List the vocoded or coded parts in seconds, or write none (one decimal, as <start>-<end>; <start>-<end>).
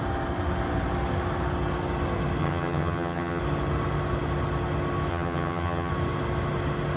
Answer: 2.4-3.4; 5.1-5.9